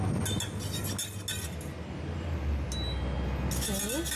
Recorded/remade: recorded